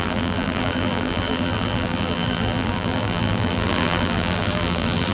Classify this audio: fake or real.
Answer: fake